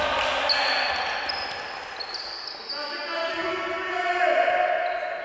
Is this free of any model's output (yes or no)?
yes